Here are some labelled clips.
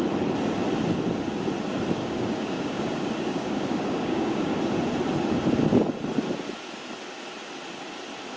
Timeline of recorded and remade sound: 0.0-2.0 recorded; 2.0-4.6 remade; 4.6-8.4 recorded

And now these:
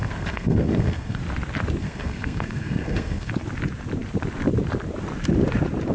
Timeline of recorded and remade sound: 0.0-1.2 remade; 1.2-1.8 recorded; 1.8-3.3 remade; 3.3-5.9 recorded

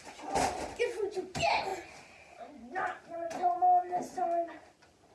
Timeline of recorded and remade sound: 0.0-5.1 recorded

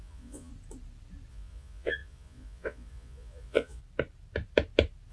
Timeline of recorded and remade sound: 0.0-0.5 remade; 0.5-1.3 recorded; 1.3-3.8 remade; 3.8-5.1 recorded

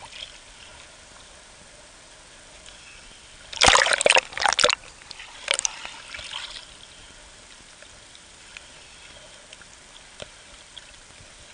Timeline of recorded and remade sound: 0.0-11.5 recorded

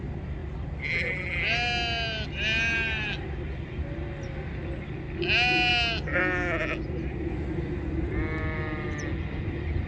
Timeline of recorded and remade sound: 0.0-9.9 recorded

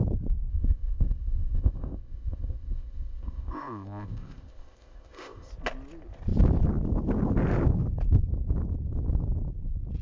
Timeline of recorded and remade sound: 0.0-0.5 recorded; 0.5-5.5 remade; 5.5-10.0 recorded

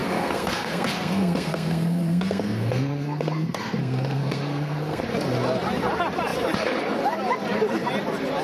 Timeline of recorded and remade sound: 0.0-5.0 remade; 5.0-8.4 recorded